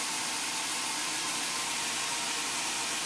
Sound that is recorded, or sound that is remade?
recorded